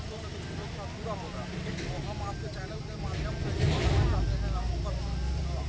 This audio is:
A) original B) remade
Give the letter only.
A